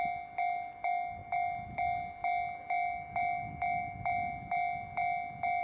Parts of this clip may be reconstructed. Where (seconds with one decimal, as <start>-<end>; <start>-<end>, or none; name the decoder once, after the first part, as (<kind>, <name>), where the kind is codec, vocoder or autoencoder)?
none